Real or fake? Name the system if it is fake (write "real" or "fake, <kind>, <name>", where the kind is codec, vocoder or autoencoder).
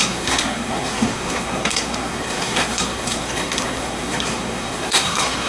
fake, codec, SNAC